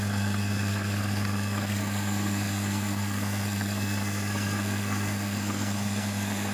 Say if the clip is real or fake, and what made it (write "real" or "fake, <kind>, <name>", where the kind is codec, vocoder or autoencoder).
fake, codec, SNAC